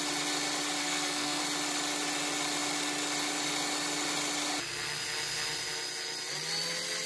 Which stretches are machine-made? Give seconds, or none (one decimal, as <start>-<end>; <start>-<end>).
0.8-1.4